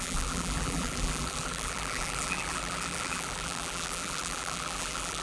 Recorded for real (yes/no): no